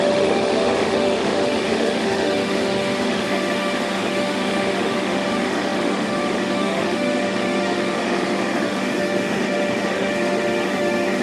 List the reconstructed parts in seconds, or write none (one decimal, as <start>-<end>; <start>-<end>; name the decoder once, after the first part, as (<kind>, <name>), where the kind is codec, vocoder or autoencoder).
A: 0.0-11.2 (autoencoder, DAC-VAE)